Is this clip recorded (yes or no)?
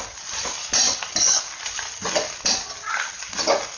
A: yes